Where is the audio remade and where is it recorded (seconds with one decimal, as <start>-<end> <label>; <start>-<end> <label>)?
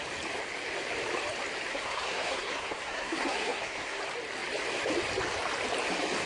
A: 0.0-1.7 recorded; 1.7-4.0 remade; 4.0-6.3 recorded